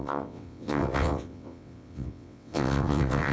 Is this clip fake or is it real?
fake